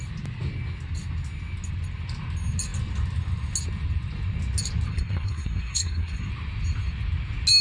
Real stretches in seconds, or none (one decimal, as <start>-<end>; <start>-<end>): 0.0-4.9; 6.3-7.6